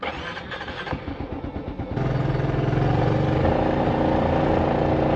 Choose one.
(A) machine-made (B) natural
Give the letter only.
B